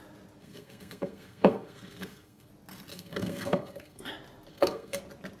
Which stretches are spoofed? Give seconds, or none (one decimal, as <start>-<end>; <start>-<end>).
0.4-2.5; 2.9-4.1; 4.5-5.0

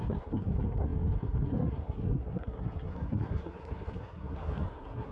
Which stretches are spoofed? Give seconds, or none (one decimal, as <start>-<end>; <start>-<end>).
0.0-5.1

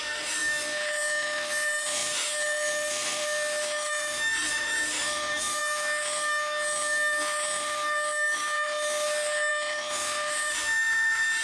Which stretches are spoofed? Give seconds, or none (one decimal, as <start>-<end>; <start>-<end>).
0.0-11.4

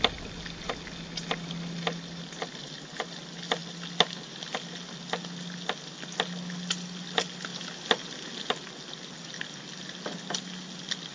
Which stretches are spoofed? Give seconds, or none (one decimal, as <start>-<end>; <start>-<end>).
none

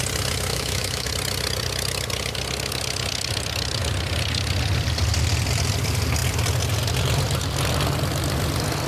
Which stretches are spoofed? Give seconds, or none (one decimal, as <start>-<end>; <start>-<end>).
0.5-1.1

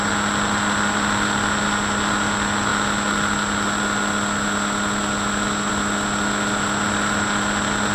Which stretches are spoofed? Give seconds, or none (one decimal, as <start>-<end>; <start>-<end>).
none